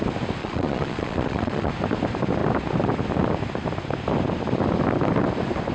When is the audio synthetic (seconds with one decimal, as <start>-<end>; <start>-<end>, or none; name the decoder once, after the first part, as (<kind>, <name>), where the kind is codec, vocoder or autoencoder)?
0.4-1.7 (vocoder, Vocos)